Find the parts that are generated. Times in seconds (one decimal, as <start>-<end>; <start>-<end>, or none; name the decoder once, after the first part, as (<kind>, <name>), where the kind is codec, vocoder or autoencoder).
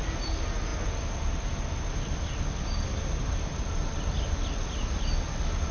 none